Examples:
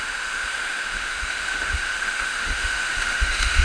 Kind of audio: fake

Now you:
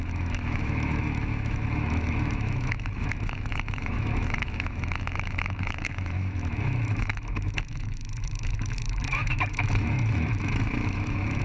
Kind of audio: fake